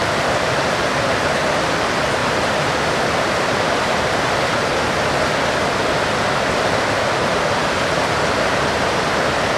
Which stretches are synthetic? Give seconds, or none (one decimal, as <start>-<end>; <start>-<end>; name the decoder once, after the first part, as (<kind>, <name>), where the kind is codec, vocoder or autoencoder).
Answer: 0.0-0.5 (vocoder, BigVGAN v2); 2.2-4.0

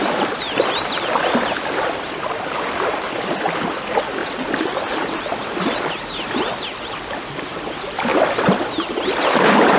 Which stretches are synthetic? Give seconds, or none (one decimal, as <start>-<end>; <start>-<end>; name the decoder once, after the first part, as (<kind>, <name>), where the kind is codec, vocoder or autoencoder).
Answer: 4.2-6.0 (vocoder, BigVGAN v2); 8.1-9.2